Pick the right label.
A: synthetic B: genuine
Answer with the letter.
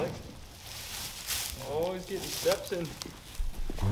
B